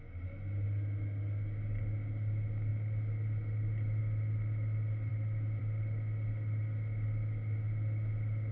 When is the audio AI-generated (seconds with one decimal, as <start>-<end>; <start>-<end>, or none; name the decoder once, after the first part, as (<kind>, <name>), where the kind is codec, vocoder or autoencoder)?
5.1-5.6 (autoencoder, DAC-VAE)